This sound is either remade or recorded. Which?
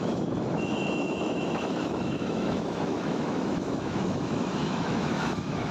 remade